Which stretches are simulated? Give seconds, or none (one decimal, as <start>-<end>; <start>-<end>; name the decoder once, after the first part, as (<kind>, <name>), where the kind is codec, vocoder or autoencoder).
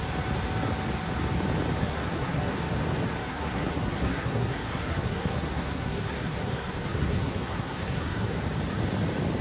1.8-2.5 (codec, SNAC); 3.2-8.4